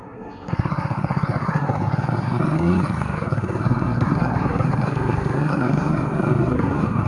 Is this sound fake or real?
fake